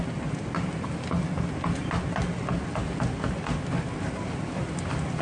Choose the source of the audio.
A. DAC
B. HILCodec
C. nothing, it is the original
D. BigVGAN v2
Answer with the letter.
C